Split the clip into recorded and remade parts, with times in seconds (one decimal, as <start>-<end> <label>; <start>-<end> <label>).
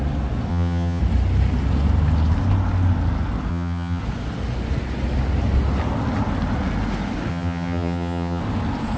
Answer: 0.0-0.5 recorded; 0.5-1.0 remade; 1.0-3.5 recorded; 3.5-4.0 remade; 4.0-7.3 recorded; 7.3-8.4 remade; 8.4-9.0 recorded